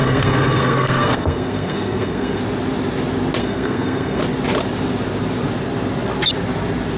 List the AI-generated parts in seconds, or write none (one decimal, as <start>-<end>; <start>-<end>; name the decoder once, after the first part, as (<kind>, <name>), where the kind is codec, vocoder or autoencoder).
0.0-2.4 (codec, SNAC); 3.4-4.2